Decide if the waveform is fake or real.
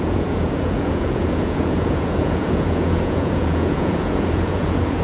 fake